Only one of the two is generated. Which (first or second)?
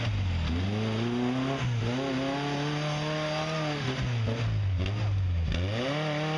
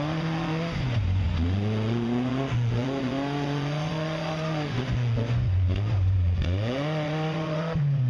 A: second